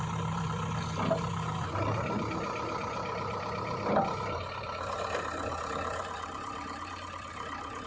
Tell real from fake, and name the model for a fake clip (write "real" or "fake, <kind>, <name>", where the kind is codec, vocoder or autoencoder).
real